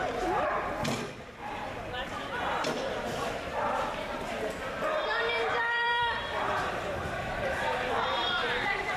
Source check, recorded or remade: remade